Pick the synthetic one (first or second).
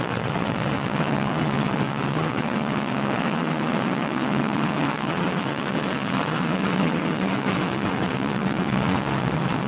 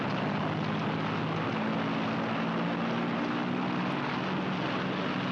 first